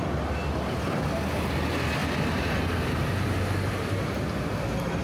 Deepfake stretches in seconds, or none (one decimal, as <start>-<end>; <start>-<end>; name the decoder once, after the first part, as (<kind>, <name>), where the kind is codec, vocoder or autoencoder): none